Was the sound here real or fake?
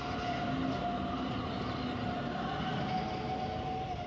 real